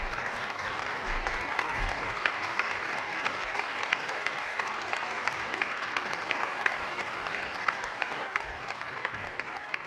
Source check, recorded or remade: remade